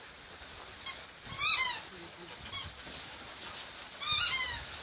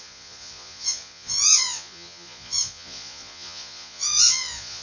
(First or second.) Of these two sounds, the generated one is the second